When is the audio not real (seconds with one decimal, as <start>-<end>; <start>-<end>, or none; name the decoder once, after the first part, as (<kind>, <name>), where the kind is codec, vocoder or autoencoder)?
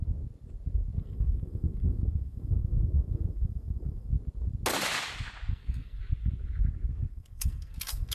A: 1.0-4.1 (codec, SNAC); 5.5-6.0; 7.1-8.1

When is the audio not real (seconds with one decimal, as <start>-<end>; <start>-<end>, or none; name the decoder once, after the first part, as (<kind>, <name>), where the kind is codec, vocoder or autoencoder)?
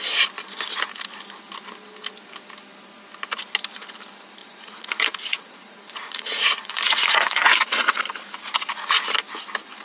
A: 4.4-8.0 (vocoder, Vocos)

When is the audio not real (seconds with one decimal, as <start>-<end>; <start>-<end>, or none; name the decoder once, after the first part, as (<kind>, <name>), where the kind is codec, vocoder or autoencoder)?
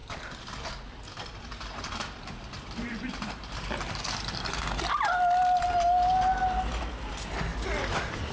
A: 0.0-4.8 (vocoder, BigVGAN v2); 7.5-8.3